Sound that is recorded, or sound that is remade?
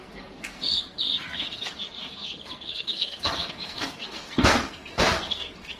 remade